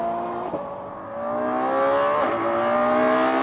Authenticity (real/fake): real